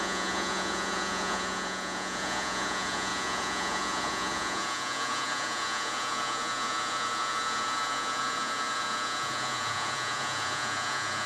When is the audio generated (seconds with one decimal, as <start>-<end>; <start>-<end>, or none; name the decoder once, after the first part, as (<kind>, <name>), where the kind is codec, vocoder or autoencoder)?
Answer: 0.0-11.3 (vocoder, Vocos)